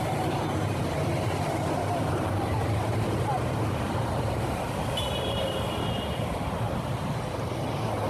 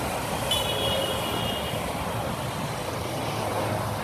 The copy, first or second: first